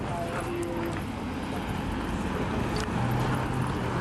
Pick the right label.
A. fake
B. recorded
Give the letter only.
B